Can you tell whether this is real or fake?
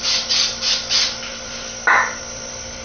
fake